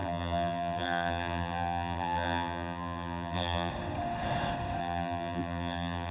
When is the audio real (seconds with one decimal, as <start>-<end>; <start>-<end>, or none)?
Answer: 3.7-4.8